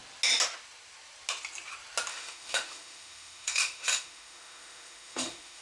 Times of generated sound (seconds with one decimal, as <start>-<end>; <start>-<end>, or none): 2.1-5.6